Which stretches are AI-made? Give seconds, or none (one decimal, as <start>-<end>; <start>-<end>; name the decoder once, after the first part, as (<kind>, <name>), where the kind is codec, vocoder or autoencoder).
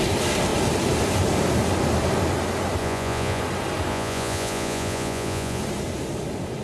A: 2.8-3.4 (vocoder, Vocos); 3.9-5.6